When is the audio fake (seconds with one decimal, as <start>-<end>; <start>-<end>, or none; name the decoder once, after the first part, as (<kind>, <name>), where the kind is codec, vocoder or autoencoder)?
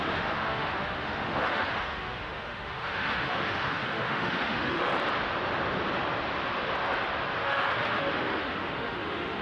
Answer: 0.0-4.9 (autoencoder, DAC-VAE); 7.4-9.4